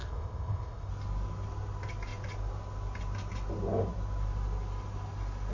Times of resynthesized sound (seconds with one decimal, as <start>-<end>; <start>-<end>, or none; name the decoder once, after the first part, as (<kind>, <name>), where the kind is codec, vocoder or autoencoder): 0.0-0.9 (codec, ZipCodec)